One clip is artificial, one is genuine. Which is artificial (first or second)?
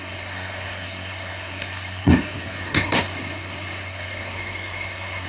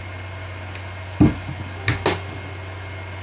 first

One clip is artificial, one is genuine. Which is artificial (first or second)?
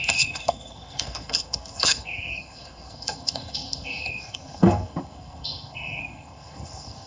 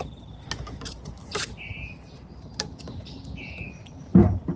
first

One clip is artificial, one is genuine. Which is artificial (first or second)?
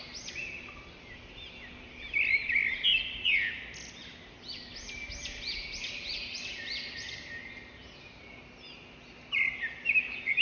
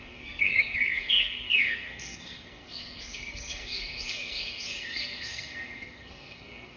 second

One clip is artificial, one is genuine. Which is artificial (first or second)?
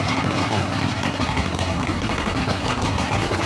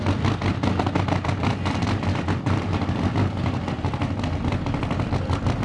first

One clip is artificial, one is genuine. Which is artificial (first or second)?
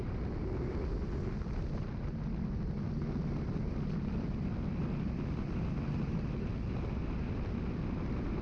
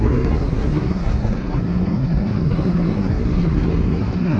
second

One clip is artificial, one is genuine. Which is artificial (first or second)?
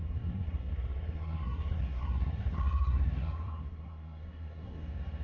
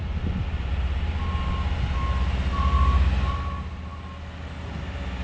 first